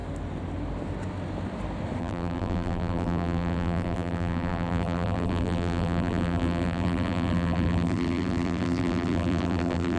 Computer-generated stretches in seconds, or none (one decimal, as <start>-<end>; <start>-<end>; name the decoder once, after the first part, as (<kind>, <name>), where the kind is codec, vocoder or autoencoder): 2.0-10.0 (vocoder, BigVGAN v2)